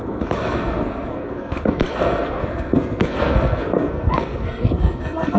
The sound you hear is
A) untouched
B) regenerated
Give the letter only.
B